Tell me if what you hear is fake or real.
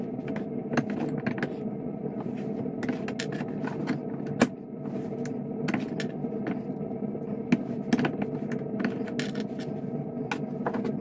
real